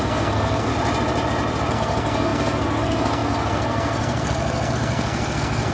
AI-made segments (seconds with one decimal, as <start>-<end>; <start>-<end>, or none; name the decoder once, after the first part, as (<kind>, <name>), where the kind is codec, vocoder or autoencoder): 0.0-0.7 (codec, SNAC); 1.7-5.7